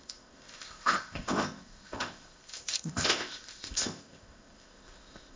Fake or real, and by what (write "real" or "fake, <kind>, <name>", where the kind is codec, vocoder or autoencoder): fake, codec, ZipCodec